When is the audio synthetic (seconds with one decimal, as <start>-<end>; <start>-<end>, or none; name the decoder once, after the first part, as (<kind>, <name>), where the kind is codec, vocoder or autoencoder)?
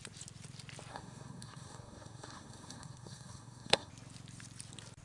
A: 0.9-3.9 (codec, SNAC)